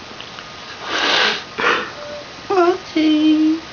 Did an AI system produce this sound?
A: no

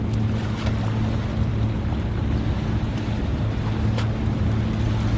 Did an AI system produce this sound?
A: no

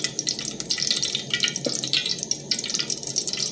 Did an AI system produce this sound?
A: no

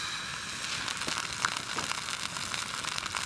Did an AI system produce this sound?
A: no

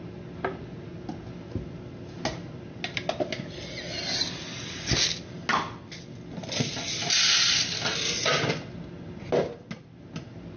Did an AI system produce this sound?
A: no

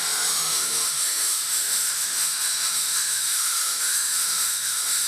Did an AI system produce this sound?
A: yes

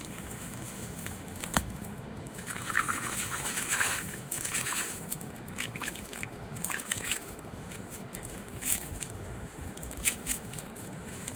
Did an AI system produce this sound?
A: yes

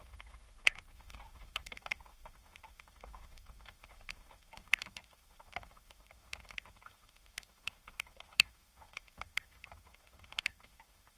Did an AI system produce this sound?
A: yes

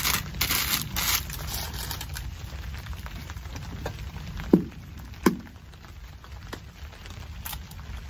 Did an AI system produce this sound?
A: no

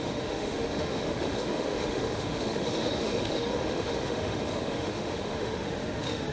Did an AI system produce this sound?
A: yes